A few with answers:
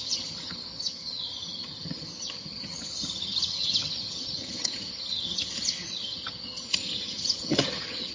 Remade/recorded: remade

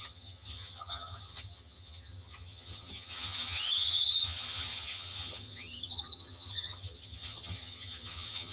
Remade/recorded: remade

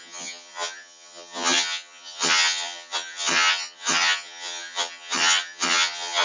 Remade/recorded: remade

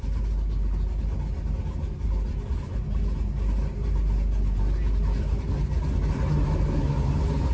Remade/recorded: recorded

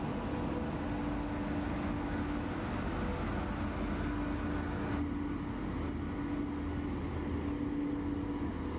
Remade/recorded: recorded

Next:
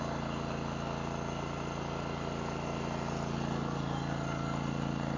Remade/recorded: recorded